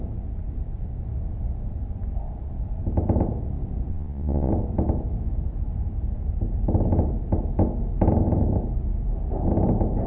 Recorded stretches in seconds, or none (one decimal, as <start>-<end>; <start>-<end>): 0.0-3.9; 4.5-10.1